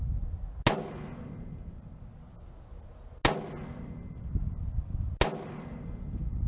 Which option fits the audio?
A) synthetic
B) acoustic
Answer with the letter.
B